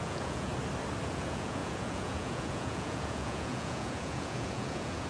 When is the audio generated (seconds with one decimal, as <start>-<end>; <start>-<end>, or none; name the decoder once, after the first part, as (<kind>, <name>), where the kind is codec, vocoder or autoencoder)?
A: 0.0-0.5 (vocoder, Vocos); 1.1-5.1